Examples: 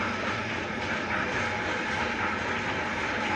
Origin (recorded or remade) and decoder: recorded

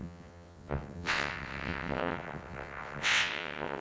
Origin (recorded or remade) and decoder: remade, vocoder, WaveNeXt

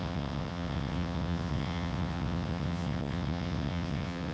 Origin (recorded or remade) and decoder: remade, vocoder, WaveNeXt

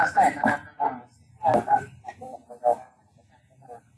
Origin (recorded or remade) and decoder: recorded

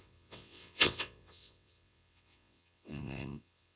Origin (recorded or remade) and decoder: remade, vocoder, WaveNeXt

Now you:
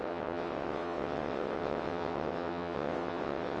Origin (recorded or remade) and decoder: remade, vocoder, WaveNeXt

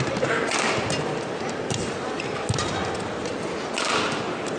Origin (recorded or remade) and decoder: recorded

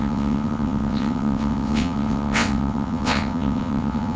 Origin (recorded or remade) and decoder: remade, vocoder, WaveNeXt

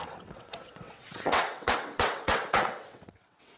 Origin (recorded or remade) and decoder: remade, vocoder, WaveNeXt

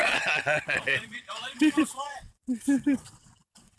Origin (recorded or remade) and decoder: remade, vocoder, WaveNeXt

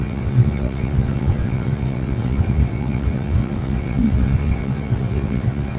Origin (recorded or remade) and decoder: remade, vocoder, WaveNeXt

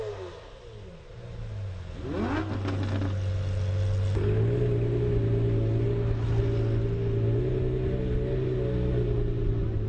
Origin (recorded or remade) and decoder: recorded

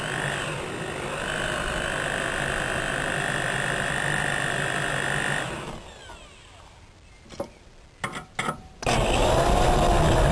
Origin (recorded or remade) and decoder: recorded